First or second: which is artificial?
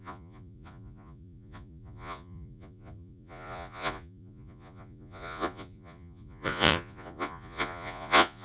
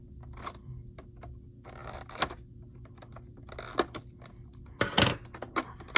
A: first